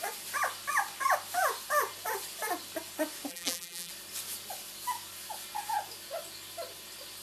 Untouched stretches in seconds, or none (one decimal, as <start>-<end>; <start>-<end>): 0.0-3.3; 3.9-7.2